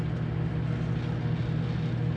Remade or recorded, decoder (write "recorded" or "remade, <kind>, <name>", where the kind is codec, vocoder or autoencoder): recorded